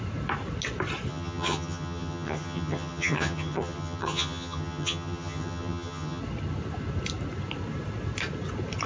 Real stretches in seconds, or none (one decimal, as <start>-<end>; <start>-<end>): 0.0-1.1; 6.2-8.9